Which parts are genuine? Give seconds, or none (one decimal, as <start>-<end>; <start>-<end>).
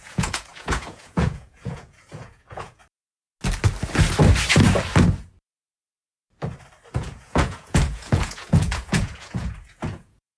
2.8-6.9